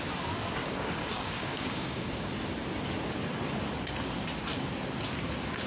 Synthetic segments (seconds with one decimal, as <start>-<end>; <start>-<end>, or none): 0.6-2.3